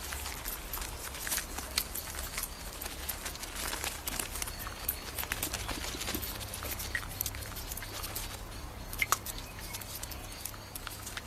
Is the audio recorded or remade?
recorded